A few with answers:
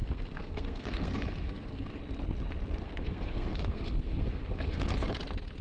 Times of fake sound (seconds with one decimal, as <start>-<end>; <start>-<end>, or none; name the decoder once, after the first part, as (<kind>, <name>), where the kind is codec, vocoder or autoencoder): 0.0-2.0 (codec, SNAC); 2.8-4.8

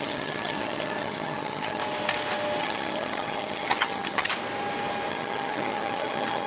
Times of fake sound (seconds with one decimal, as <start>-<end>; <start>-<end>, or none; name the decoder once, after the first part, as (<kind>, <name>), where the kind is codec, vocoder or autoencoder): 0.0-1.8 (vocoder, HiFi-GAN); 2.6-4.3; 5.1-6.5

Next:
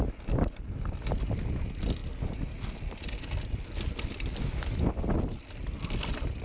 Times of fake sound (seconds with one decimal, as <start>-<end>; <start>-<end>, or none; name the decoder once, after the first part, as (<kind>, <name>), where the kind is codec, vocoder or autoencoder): none

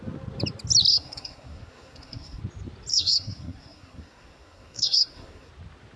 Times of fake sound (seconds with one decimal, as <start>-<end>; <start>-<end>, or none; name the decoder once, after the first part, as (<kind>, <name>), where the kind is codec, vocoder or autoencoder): 0.9-2.4 (codec, SNAC); 2.9-5.5

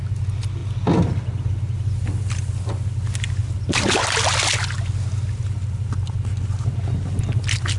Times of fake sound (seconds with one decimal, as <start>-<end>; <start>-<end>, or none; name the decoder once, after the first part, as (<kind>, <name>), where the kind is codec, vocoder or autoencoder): none